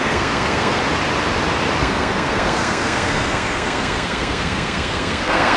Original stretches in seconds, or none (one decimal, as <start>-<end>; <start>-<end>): 0.8-1.8